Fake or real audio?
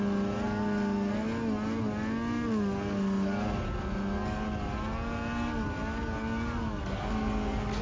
real